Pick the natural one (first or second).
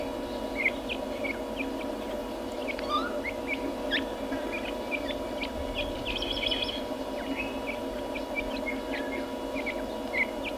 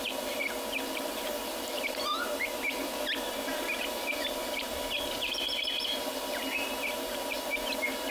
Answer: first